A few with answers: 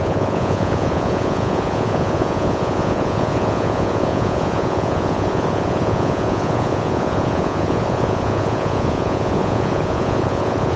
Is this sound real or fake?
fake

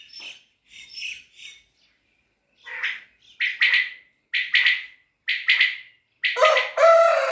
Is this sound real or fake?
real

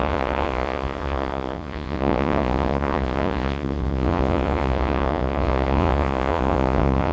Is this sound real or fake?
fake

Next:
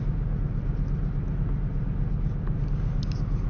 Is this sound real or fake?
real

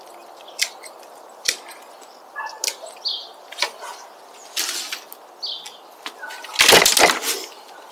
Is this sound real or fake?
real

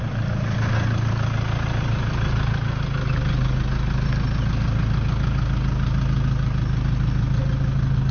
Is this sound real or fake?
real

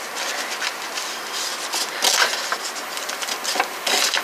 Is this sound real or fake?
real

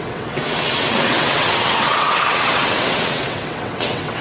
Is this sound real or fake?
fake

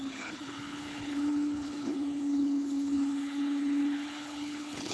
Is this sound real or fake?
fake